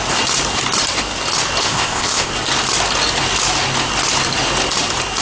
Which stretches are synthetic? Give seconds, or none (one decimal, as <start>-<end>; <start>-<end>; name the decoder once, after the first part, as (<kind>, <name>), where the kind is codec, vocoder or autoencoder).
1.6-2.3 (codec, ZipCodec)